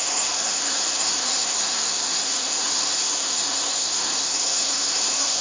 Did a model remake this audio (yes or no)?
yes